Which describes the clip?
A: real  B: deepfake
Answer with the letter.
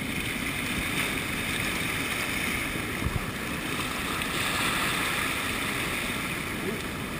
A